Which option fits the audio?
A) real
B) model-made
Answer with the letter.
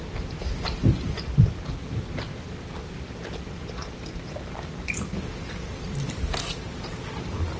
A